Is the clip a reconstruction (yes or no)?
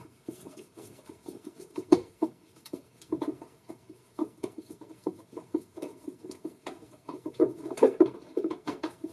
yes